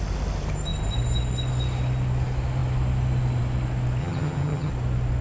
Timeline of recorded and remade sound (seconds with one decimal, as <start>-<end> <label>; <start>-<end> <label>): 0.0-4.0 recorded; 4.0-4.7 remade; 4.7-5.2 recorded